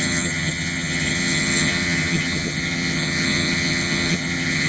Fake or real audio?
fake